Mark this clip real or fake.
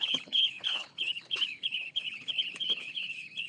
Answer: fake